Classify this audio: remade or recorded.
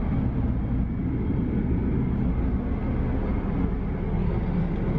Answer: recorded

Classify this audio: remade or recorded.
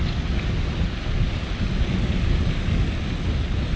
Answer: recorded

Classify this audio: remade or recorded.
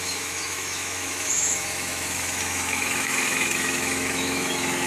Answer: remade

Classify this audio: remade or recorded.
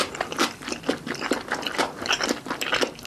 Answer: recorded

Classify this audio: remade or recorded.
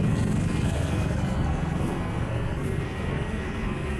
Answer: remade